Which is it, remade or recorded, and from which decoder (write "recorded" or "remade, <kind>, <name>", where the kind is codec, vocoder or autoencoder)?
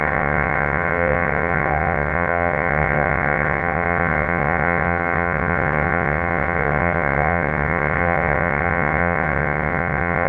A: remade, vocoder, WaveNeXt